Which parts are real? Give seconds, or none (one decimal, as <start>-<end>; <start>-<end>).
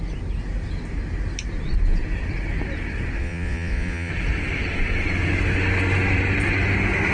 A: 0.0-3.2; 4.1-7.1